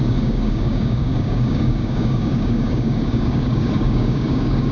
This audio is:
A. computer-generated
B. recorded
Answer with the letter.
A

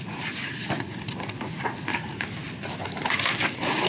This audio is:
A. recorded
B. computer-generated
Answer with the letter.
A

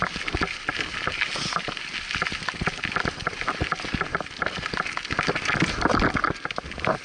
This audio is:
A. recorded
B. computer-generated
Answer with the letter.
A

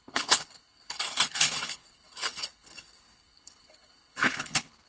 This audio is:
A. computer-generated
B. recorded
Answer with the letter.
A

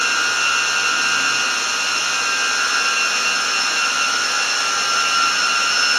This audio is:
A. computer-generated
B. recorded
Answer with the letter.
B